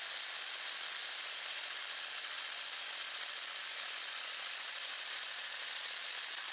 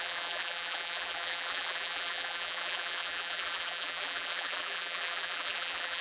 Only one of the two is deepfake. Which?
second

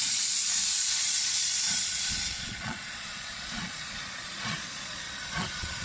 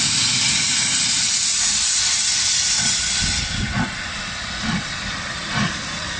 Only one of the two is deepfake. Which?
first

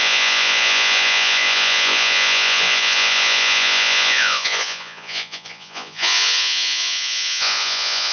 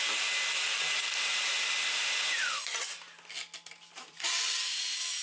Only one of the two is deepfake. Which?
first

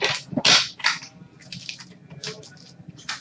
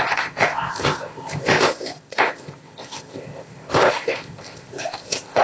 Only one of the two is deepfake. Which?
second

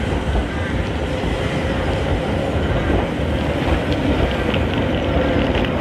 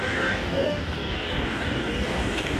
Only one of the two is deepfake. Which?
second